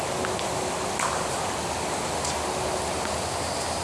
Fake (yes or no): no